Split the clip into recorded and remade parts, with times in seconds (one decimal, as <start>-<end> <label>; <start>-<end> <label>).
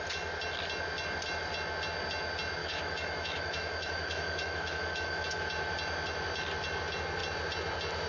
0.0-2.6 recorded; 2.6-5.4 remade; 5.4-8.1 recorded